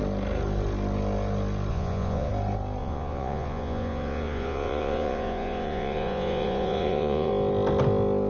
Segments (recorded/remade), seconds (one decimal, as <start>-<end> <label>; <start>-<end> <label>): 0.0-1.7 recorded; 1.7-2.3 remade; 2.3-2.8 recorded; 2.8-7.3 remade; 7.3-8.3 recorded